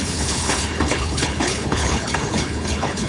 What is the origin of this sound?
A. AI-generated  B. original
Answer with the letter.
A